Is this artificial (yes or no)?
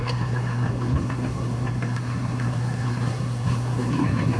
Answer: yes